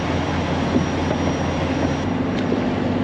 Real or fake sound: real